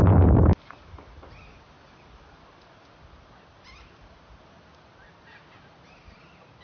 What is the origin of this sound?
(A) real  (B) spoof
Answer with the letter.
A